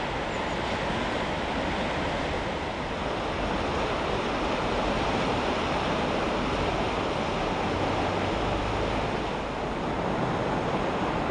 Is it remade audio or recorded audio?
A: recorded